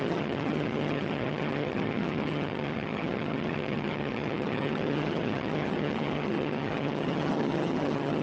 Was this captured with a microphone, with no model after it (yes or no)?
no